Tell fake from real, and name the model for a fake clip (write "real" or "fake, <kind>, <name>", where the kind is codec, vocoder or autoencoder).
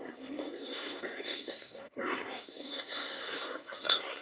fake, codec, SNAC